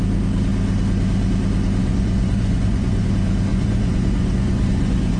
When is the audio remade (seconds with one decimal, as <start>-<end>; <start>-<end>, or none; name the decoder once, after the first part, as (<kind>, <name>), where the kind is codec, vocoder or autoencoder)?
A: 1.8-3.1 (vocoder, Vocos); 3.5-5.2